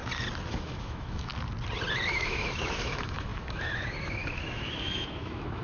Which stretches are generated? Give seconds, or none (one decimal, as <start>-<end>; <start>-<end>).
0.5-1.3; 2.1-5.6